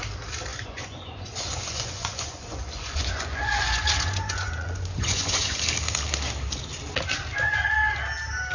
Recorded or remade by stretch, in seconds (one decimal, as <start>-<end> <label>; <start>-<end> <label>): 0.0-0.5 recorded; 0.5-5.6 remade; 5.6-8.5 recorded